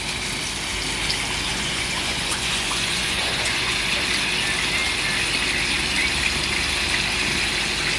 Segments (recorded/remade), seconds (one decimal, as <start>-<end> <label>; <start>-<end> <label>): 0.0-1.5 recorded; 1.5-3.9 remade; 3.9-8.0 recorded